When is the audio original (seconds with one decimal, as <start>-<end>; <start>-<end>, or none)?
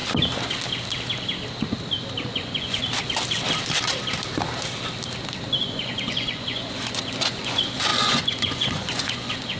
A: 0.0-2.3; 2.8-5.6